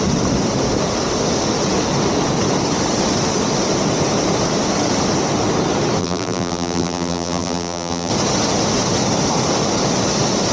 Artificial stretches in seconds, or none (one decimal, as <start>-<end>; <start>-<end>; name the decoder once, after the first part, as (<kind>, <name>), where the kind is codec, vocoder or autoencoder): 6.0-8.1 (vocoder, BigVGAN v2)